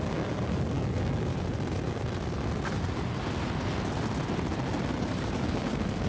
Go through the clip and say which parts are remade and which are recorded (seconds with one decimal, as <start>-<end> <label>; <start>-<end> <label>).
0.0-1.3 remade; 1.3-5.0 recorded; 5.0-6.1 remade